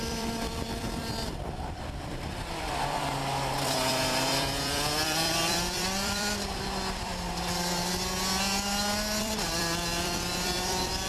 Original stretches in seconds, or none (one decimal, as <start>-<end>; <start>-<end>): 7.1-9.2